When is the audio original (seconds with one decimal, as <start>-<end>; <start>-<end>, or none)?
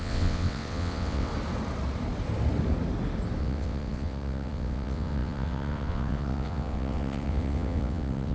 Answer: 1.3-3.4